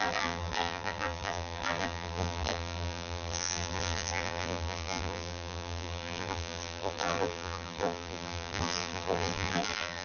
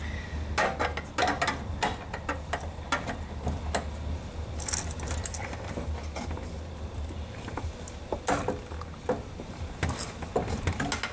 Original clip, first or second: second